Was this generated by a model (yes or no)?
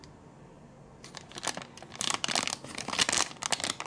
no